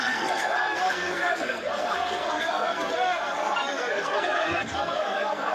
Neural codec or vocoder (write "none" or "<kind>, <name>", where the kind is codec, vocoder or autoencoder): codec, SNAC